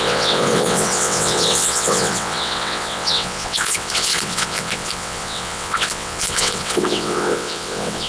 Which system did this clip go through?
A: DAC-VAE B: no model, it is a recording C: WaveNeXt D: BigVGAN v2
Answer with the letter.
C